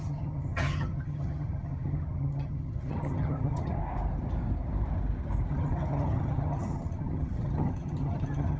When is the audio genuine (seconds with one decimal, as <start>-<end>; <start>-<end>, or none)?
3.8-5.5